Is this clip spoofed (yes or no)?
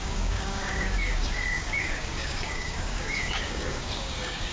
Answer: yes